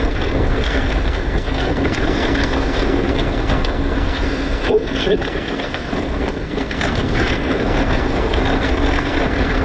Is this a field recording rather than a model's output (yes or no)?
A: no